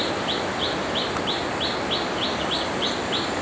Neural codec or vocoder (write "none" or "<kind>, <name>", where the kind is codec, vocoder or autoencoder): none